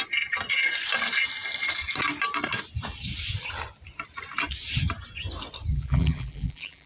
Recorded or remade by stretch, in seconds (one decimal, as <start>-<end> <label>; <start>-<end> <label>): 0.0-5.7 recorded; 5.7-6.9 remade